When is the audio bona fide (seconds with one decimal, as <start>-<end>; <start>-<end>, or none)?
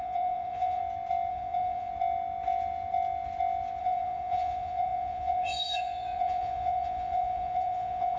0.8-1.3; 1.9-3.8